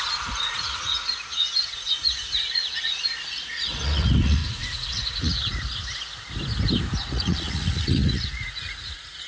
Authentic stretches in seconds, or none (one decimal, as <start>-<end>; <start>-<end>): 5.4-7.0